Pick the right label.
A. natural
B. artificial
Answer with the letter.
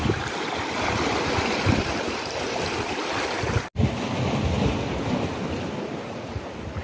A